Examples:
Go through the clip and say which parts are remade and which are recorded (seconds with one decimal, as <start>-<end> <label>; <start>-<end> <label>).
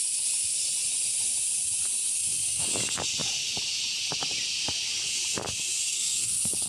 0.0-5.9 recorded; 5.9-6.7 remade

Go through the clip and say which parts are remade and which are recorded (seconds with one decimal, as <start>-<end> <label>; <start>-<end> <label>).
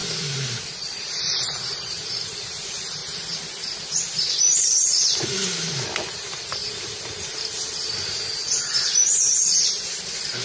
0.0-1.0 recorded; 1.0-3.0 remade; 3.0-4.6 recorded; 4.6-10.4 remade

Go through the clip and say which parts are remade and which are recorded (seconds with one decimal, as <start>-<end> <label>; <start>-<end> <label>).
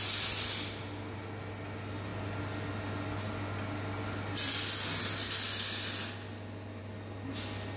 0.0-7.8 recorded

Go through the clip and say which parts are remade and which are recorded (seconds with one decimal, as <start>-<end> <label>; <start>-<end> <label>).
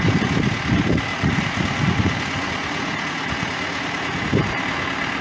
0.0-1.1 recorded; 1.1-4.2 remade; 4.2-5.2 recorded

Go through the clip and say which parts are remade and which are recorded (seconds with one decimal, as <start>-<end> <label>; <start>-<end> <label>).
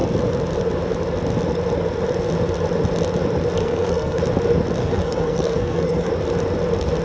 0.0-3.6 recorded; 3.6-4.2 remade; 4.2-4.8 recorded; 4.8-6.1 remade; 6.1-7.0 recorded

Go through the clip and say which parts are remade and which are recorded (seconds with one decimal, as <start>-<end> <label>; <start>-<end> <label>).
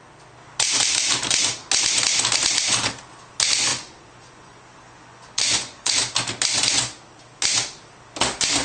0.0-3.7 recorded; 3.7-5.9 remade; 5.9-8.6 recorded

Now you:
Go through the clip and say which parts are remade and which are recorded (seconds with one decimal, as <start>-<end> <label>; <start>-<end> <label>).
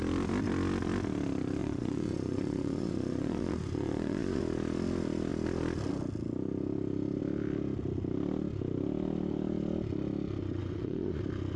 0.0-1.6 recorded; 1.6-4.4 remade; 4.4-10.6 recorded; 10.6-11.2 remade; 11.2-11.6 recorded